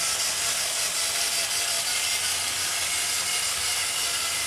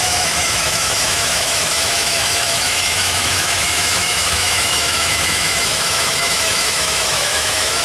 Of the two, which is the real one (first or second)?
first